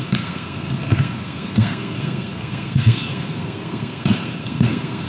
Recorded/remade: remade